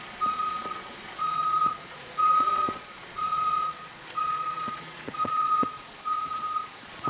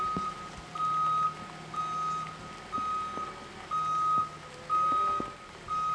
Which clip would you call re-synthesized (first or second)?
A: first